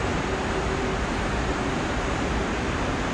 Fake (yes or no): no